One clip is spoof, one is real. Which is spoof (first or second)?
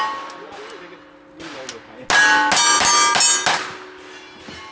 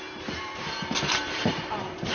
second